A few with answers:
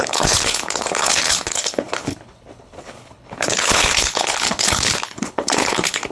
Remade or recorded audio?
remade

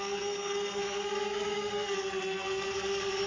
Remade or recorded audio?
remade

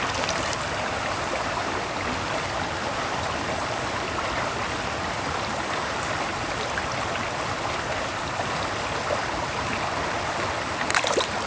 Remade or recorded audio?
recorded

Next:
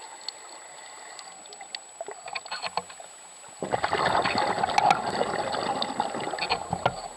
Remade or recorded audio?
recorded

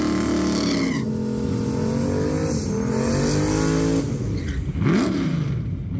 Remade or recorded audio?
recorded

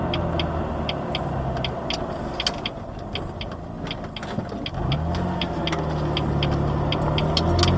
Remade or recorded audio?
recorded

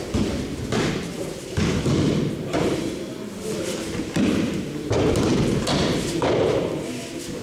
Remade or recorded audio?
recorded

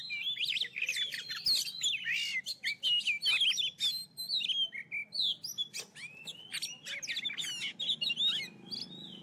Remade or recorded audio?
recorded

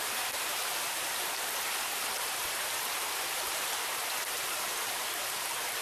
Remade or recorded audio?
remade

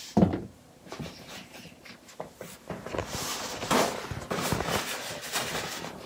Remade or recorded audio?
remade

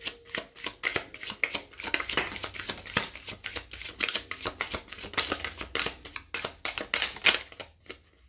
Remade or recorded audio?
recorded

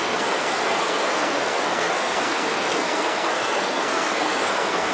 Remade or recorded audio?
remade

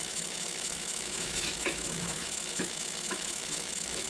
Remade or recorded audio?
remade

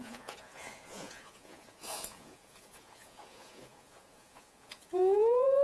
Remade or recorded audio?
remade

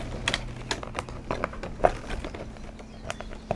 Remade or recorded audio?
recorded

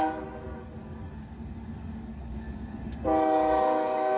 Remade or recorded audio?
remade